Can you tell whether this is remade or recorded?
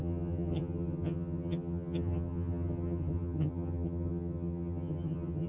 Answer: remade